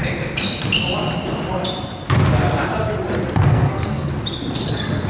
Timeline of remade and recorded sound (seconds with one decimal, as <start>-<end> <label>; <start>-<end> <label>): 0.0-3.5 recorded; 3.5-4.1 remade; 4.1-5.1 recorded